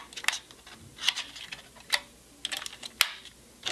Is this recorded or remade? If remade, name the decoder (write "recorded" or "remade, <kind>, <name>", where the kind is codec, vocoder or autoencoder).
recorded